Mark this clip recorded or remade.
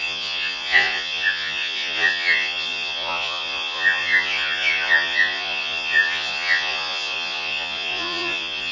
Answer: remade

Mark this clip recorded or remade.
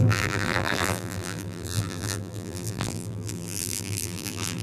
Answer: remade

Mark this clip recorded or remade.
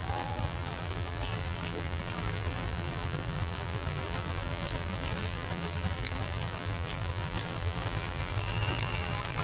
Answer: remade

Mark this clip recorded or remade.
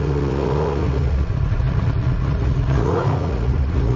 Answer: remade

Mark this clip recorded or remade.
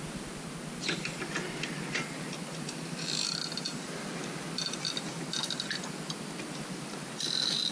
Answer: recorded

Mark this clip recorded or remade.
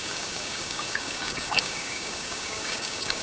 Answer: remade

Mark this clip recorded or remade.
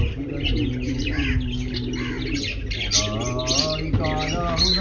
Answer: recorded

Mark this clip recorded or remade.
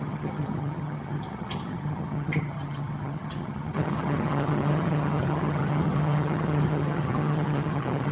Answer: remade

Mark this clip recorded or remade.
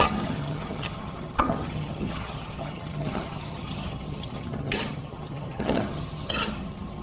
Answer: remade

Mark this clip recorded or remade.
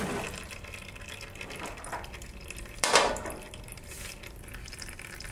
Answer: remade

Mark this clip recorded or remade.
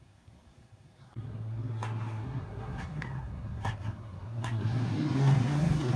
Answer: remade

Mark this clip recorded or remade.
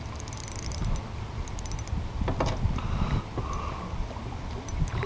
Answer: recorded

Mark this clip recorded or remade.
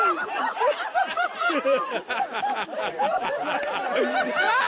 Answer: remade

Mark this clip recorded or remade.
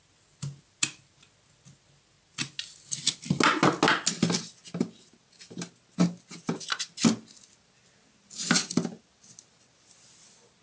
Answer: recorded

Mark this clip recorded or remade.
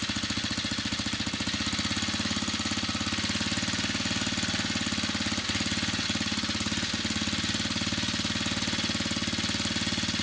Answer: recorded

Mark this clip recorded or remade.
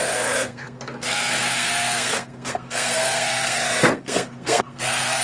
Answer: remade